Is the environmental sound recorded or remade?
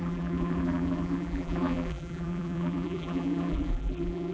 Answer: remade